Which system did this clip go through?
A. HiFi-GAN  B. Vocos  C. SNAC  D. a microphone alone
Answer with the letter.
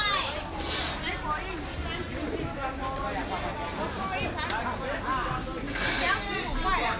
D